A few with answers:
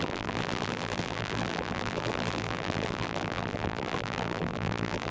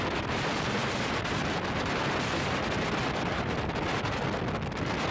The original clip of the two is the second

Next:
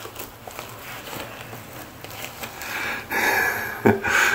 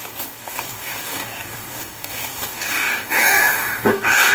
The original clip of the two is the first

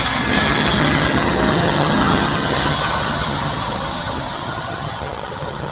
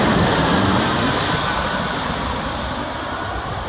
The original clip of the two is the second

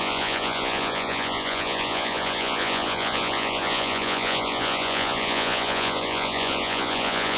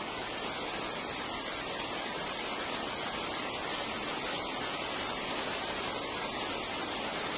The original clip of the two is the second